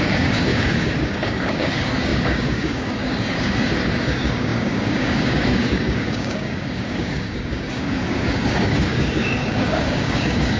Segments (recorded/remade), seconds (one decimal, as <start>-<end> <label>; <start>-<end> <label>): 0.0-10.6 remade